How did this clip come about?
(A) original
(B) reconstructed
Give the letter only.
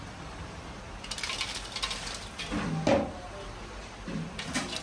A